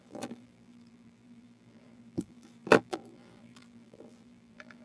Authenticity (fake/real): fake